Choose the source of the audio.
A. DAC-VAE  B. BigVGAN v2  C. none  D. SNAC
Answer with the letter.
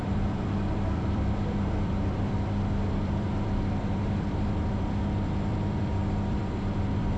B